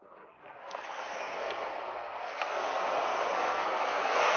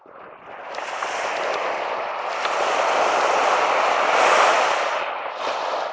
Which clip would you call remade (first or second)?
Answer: first